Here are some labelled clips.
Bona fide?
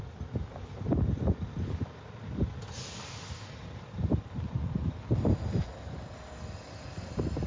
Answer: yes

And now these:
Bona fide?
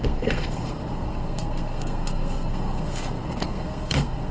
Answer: no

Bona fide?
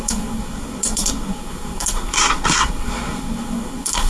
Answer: no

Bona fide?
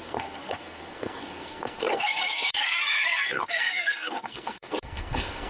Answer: no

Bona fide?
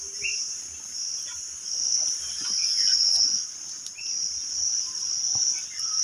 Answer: yes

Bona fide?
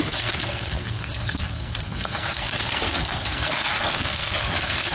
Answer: no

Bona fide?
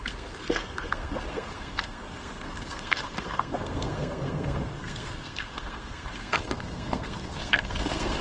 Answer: no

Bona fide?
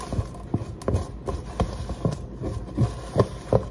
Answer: yes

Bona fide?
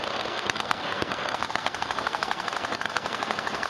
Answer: no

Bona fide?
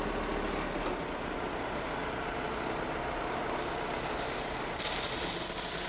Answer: yes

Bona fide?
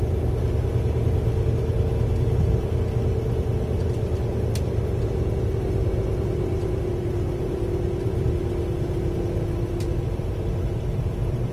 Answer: yes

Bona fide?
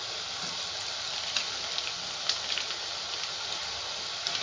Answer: yes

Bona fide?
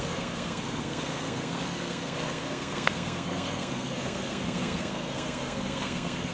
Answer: no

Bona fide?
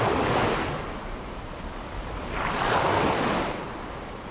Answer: yes